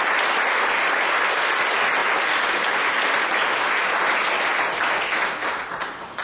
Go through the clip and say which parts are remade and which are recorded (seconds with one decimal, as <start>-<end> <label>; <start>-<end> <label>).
0.0-6.2 recorded